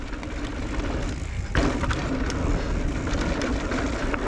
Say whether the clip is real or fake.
real